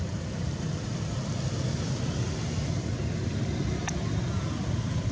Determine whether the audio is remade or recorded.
recorded